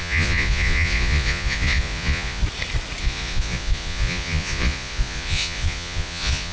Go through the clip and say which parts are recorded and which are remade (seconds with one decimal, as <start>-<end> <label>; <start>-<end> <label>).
0.0-2.4 remade; 2.4-3.0 recorded; 3.0-6.5 remade